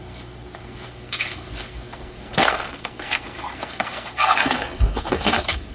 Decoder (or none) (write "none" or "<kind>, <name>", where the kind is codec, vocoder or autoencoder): codec, SNAC